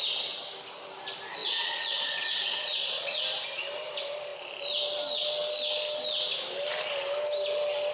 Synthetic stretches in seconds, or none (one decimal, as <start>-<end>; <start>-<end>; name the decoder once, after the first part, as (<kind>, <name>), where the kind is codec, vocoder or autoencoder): 1.4-3.2 (vocoder, Vocos)